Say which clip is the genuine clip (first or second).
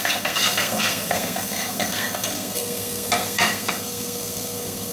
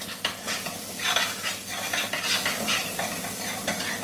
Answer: second